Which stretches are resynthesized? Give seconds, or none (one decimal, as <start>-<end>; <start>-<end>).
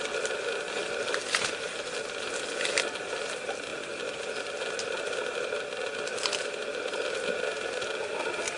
none